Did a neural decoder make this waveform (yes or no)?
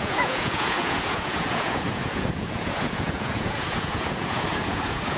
yes